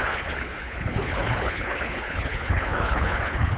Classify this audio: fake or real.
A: fake